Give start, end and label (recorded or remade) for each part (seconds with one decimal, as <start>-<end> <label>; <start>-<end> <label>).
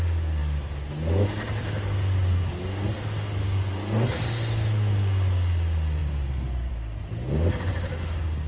0.0-8.5 recorded